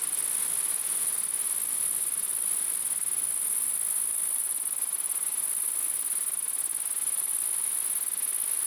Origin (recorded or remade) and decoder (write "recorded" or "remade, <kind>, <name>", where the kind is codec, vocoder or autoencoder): recorded